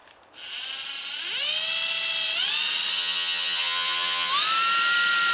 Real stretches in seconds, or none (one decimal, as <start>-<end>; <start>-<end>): 0.0-2.9; 4.3-5.3